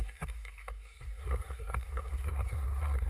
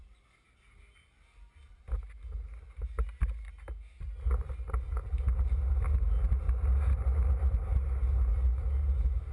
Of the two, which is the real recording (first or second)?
second